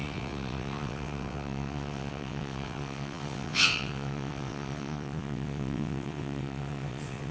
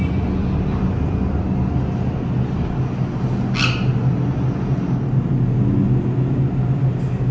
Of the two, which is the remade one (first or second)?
first